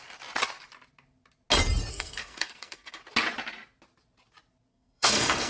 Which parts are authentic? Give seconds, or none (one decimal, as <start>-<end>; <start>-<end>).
0.0-1.9; 3.0-4.7